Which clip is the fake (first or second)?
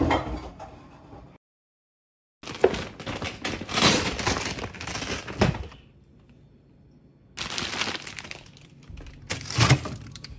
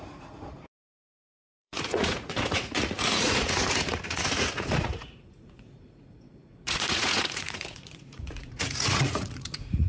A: second